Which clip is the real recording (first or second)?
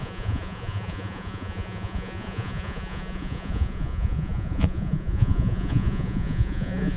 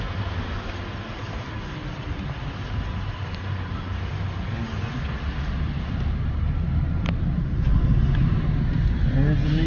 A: second